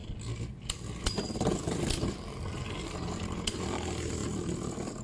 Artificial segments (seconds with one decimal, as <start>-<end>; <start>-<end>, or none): none